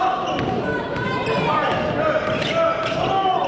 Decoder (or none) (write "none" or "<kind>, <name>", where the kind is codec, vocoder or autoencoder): none